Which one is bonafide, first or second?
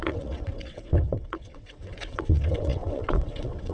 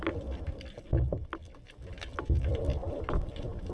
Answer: second